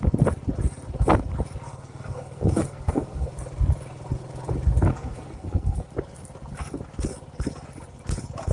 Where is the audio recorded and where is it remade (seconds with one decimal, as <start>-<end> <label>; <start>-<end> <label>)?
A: 0.0-1.7 recorded; 1.7-3.3 remade; 3.3-4.9 recorded; 4.9-5.9 remade; 5.9-8.5 recorded